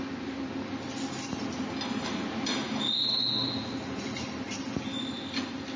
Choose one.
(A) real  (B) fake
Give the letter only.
A